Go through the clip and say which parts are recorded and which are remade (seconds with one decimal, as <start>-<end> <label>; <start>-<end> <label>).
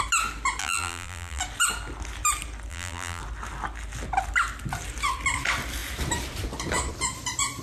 0.0-0.6 recorded; 0.6-1.4 remade; 1.4-2.7 recorded; 2.7-3.2 remade; 3.2-7.6 recorded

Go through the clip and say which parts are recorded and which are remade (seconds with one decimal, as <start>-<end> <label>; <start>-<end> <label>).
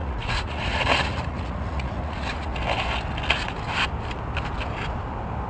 0.0-2.5 remade; 2.5-5.5 recorded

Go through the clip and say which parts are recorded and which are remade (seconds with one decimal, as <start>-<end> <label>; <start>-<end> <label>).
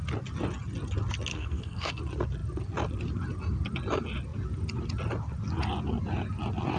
0.0-1.3 recorded; 1.3-2.0 remade; 2.0-6.8 recorded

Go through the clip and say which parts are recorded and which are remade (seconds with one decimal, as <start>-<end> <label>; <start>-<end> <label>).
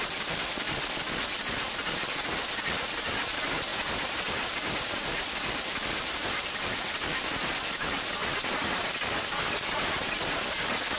0.0-3.7 recorded; 3.7-4.5 remade; 4.5-11.0 recorded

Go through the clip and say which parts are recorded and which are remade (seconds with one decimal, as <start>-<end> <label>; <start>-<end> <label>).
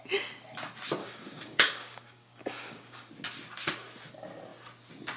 0.0-1.0 recorded; 1.0-3.1 remade; 3.1-5.2 recorded